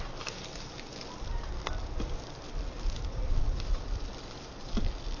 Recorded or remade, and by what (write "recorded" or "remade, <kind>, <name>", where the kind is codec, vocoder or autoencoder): recorded